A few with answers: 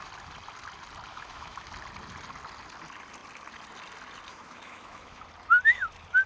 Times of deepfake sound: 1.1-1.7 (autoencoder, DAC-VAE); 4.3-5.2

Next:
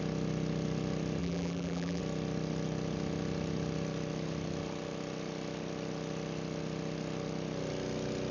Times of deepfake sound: 1.2-2.0 (vocoder, BigVGAN v2)

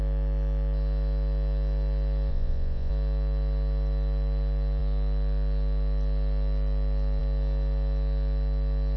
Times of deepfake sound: 2.3-2.9 (vocoder, Vocos)

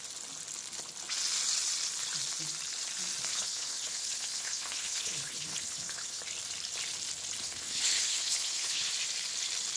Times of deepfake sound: 3.3-6.2 (codec, HILCodec); 7.4-8.9

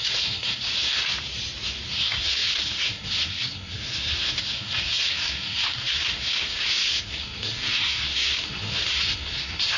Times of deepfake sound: 0.0-1.0 (codec, SNAC); 1.9-9.8

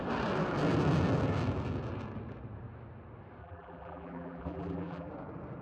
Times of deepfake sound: 3.4-5.1 (vocoder, BigVGAN v2)

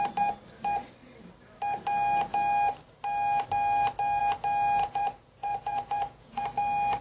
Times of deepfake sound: 4.8-6.4 (vocoder, Vocos)